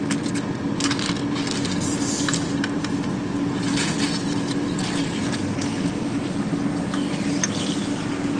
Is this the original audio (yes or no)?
yes